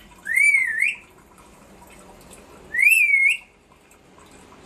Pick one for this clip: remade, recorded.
remade